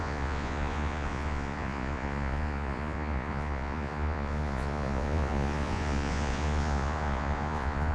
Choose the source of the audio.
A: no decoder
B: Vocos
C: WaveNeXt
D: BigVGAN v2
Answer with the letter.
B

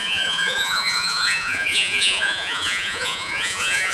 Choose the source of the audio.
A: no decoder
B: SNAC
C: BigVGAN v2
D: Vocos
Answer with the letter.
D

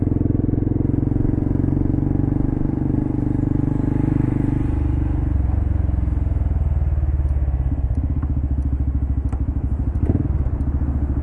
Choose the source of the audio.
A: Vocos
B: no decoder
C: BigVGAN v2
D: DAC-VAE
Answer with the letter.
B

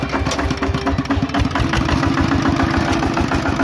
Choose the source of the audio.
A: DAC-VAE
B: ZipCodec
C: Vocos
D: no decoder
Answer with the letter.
D